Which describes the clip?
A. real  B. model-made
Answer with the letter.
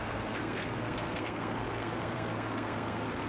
B